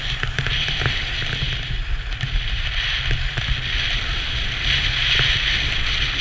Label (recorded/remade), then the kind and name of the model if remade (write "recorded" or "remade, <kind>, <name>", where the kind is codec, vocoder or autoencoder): recorded